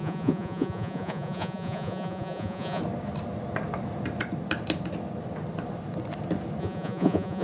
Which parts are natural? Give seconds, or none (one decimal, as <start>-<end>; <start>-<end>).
2.8-6.6